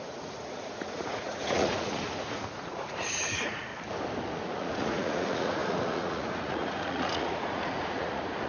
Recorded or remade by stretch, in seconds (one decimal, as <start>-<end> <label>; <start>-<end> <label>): 0.0-3.7 remade; 3.7-4.3 recorded; 4.3-8.5 remade